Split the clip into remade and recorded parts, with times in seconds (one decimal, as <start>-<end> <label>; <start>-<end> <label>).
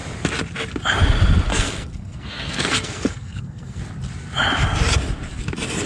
0.0-1.5 recorded; 1.5-3.8 remade; 3.8-5.9 recorded